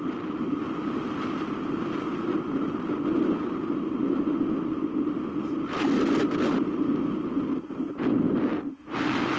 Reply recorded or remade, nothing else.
recorded